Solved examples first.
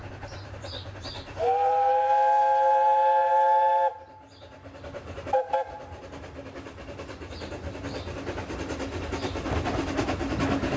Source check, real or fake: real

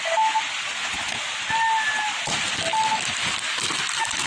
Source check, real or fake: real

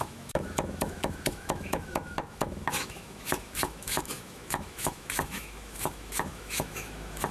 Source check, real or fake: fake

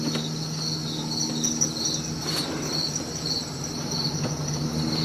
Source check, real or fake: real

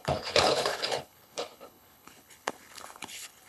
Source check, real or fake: fake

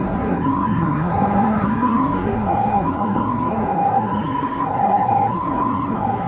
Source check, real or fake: fake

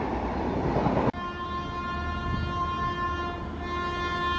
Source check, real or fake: real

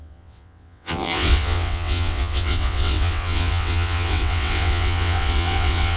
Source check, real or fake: fake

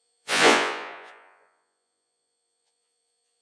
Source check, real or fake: fake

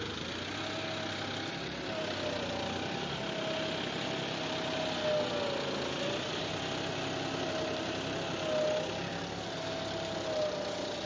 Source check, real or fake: real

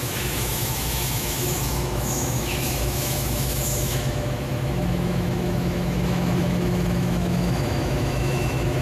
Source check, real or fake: fake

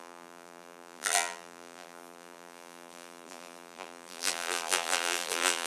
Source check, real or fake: fake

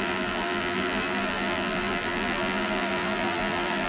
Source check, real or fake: fake